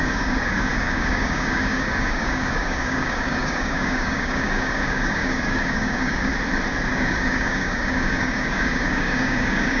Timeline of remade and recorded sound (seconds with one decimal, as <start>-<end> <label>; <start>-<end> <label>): 0.0-6.3 remade; 6.3-6.9 recorded; 6.9-9.8 remade